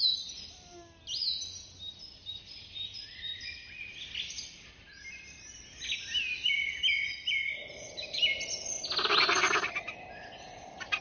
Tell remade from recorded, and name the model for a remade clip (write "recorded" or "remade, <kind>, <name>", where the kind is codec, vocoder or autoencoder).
recorded